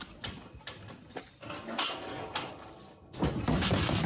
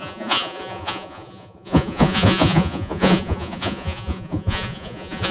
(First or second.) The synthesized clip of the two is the second